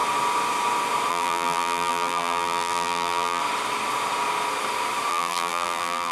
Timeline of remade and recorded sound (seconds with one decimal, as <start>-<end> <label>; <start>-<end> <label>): 0.0-1.1 recorded; 1.1-3.4 remade; 3.4-5.1 recorded; 5.1-6.1 remade